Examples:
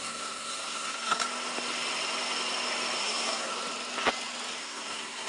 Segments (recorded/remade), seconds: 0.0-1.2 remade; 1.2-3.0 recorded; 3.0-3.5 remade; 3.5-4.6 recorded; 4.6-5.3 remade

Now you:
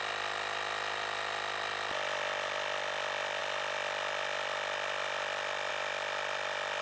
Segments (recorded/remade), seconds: 0.0-6.8 recorded

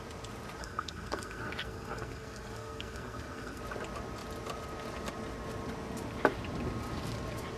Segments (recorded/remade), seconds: 0.0-0.6 recorded; 0.6-3.6 remade; 3.6-7.6 recorded

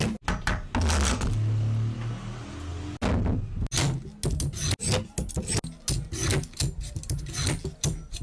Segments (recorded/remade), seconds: 0.0-8.2 recorded

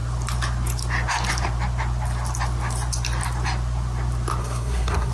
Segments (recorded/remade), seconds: 0.0-4.4 recorded; 4.4-5.1 remade